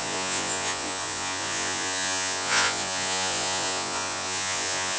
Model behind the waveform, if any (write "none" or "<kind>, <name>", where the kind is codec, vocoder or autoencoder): vocoder, Vocos